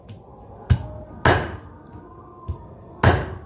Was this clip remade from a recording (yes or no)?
no